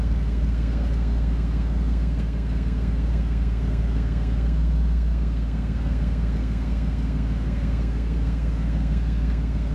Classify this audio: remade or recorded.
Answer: remade